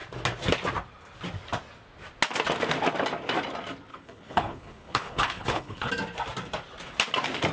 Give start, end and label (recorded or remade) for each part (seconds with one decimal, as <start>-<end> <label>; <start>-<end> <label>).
0.0-3.9 recorded; 3.9-5.9 remade; 5.9-7.5 recorded